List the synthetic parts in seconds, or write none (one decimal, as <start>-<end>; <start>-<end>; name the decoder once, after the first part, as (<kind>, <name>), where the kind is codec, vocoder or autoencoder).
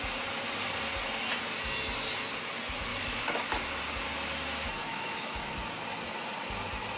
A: 2.9-3.8 (autoencoder, DAC-VAE); 4.9-5.4